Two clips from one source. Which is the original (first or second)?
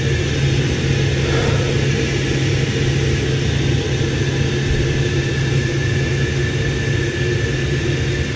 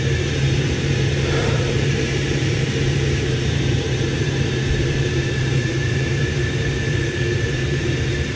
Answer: first